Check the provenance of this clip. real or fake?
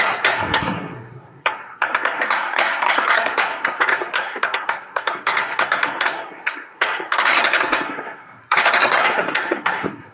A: fake